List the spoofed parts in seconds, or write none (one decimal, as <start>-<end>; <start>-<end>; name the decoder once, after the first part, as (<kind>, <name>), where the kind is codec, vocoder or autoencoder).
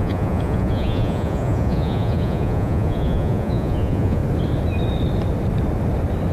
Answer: 0.0-4.2 (vocoder, Vocos)